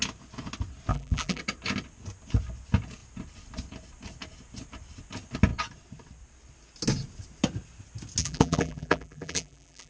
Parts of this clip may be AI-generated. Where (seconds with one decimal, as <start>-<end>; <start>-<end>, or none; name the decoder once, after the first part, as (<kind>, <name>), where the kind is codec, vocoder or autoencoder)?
0.9-1.4 (vocoder, BigVGAN v2); 8.2-9.9